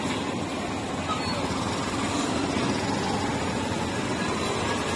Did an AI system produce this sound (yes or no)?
no